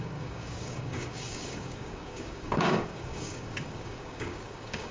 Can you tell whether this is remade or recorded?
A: remade